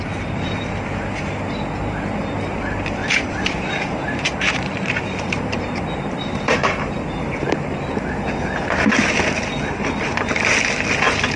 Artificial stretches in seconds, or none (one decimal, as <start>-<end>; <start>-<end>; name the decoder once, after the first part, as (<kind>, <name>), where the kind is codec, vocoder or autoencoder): 3.0-7.9 (vocoder, BigVGAN v2)